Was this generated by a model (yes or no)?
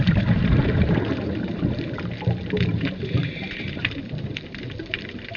yes